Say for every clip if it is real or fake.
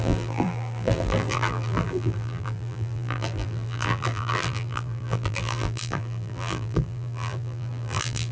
fake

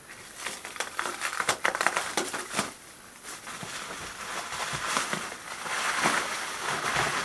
fake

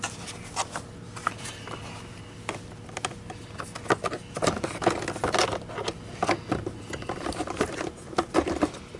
real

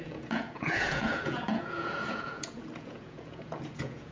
fake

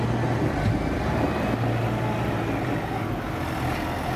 real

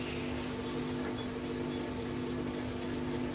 real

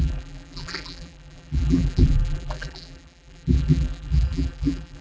fake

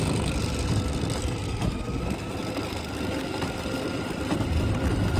real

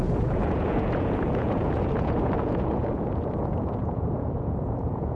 fake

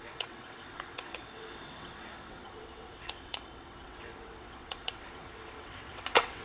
fake